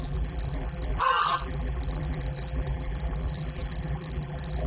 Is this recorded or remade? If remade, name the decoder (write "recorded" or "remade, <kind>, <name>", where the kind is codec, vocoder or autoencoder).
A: remade, vocoder, BigVGAN v2